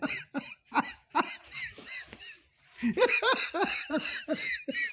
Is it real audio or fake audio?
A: fake